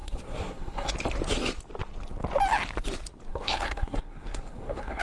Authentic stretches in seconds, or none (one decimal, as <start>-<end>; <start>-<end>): 0.9-3.3